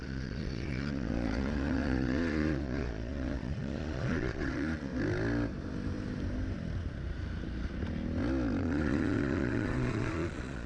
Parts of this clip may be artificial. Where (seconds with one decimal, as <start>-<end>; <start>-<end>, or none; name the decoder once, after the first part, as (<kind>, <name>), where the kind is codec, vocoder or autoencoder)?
0.0-4.9 (vocoder, Vocos); 8.6-10.7